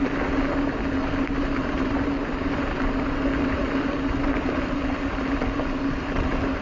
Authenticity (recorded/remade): recorded